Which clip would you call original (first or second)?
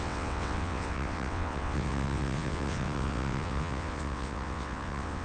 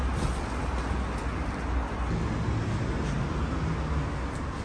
second